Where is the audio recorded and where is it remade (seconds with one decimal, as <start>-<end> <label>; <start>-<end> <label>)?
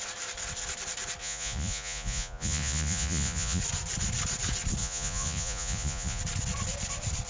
0.0-1.2 recorded; 1.2-3.6 remade; 3.6-4.8 recorded; 4.8-6.2 remade; 6.2-7.3 recorded